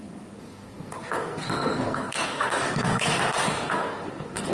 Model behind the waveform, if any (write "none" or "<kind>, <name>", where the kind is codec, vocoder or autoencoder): codec, SNAC